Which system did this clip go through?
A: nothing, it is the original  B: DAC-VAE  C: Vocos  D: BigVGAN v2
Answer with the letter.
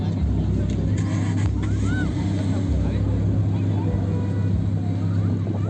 A